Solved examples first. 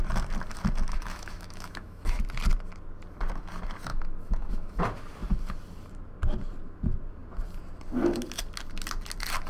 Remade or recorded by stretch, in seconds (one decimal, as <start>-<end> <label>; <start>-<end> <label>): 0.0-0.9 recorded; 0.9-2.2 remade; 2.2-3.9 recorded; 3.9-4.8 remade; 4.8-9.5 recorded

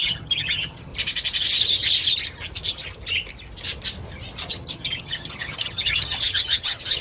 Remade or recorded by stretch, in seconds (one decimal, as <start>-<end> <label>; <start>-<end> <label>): 0.0-0.9 remade; 0.9-4.5 recorded; 4.5-7.0 remade

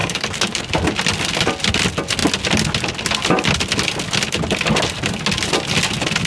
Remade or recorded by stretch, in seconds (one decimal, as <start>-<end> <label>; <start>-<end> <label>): 0.0-0.6 remade; 0.6-6.3 recorded

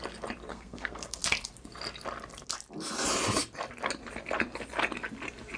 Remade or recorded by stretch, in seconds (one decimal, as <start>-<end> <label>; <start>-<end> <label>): 0.0-0.5 recorded; 0.5-1.2 remade; 1.2-5.6 recorded

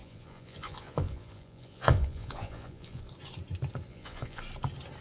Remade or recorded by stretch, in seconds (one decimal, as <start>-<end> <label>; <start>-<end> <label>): 0.0-3.0 remade; 3.0-3.9 recorded; 3.9-4.4 remade; 4.4-5.0 recorded

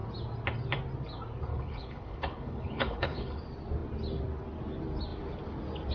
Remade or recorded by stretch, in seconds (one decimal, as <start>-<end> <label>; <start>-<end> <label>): 0.0-1.5 recorded; 1.5-3.4 remade; 3.4-5.9 recorded

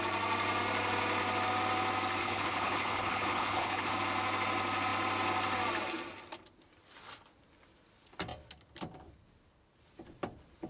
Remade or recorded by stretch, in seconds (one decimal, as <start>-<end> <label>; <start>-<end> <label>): 0.0-2.2 recorded; 2.2-3.9 remade; 3.9-10.7 recorded